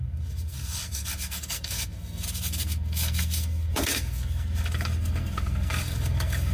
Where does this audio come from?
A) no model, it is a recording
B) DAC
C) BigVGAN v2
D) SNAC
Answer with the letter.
D